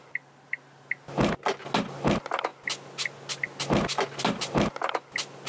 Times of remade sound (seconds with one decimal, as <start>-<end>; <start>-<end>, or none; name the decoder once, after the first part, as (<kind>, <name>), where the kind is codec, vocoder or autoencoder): none